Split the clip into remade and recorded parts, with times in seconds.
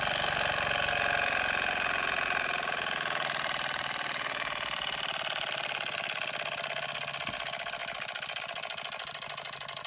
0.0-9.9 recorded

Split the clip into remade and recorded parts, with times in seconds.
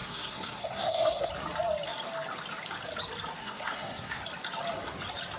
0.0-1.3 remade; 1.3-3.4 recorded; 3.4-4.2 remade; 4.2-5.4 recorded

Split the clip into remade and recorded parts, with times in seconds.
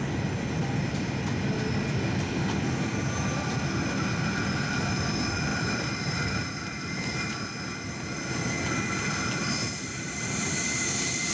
0.0-5.5 recorded; 5.5-7.3 remade; 7.3-9.6 recorded; 9.6-11.3 remade